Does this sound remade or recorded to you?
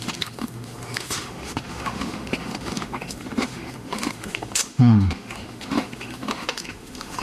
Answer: remade